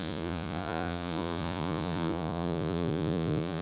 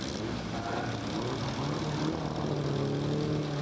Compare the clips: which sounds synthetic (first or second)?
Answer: first